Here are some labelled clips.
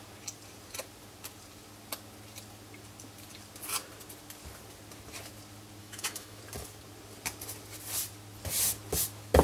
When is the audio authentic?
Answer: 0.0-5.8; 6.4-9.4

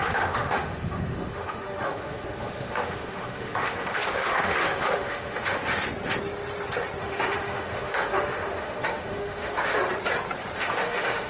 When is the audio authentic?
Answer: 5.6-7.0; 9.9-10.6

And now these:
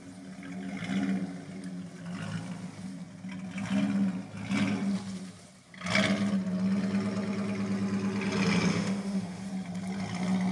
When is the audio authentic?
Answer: 0.0-8.7; 9.4-10.5

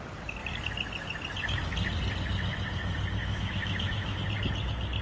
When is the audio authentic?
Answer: 0.0-3.2; 4.2-5.0

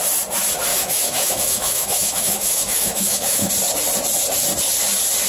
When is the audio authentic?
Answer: 0.0-0.7; 3.5-5.3

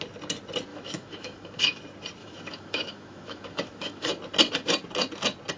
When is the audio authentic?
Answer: 0.0-0.7; 1.8-2.2; 4.1-5.6

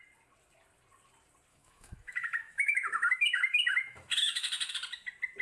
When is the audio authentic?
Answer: 0.0-1.5; 4.7-5.4

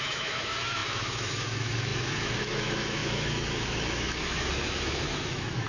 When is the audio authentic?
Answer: none